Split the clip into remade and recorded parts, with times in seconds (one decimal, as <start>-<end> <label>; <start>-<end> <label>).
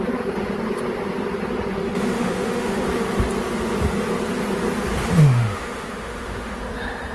0.0-1.8 recorded; 1.8-2.8 remade; 2.8-5.0 recorded; 5.0-6.6 remade; 6.6-7.1 recorded